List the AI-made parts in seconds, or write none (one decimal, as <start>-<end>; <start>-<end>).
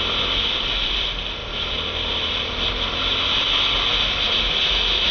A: none